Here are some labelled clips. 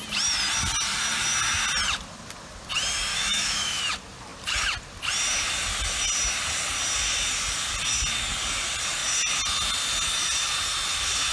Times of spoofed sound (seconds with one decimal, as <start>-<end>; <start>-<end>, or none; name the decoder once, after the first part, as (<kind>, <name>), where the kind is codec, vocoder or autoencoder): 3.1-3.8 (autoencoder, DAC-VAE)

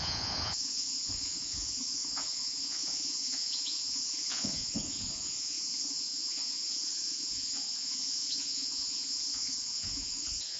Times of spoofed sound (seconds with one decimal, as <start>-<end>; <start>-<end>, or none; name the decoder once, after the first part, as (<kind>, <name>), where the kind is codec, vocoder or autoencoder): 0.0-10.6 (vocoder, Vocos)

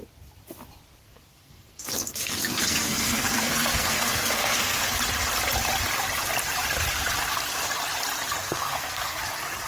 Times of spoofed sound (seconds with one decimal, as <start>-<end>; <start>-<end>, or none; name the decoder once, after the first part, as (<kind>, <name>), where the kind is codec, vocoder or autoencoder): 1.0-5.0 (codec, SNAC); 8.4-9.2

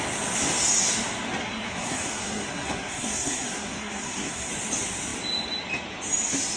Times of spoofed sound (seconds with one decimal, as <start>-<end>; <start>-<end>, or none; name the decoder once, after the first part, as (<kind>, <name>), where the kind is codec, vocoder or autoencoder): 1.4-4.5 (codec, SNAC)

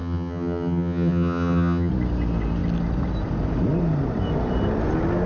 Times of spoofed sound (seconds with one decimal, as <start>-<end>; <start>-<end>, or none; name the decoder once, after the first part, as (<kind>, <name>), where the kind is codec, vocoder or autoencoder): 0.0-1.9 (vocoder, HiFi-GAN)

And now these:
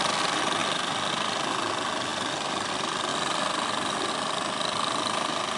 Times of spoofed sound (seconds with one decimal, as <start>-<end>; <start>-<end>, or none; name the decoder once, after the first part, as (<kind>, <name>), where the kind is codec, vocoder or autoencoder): 0.0-5.6 (vocoder, BigVGAN v2)